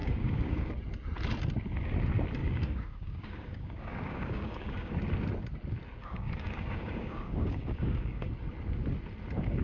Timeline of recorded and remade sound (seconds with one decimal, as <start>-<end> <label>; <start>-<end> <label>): 0.0-0.7 remade; 0.7-2.4 recorded; 2.4-4.9 remade; 4.9-6.0 recorded; 6.0-8.2 remade; 8.2-9.6 recorded